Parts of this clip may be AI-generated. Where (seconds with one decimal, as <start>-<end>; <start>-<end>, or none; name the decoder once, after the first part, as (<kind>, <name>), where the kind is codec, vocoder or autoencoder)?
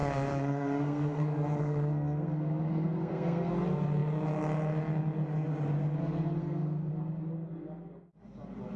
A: 0.0-3.5 (codec, SNAC); 6.4-6.9